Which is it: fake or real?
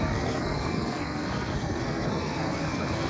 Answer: fake